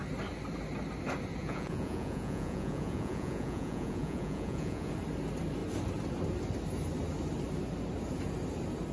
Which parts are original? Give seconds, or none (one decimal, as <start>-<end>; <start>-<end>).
0.0-1.4; 4.9-8.9